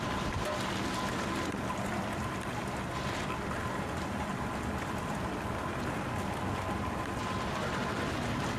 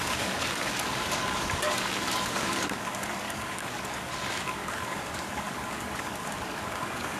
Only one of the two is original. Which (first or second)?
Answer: first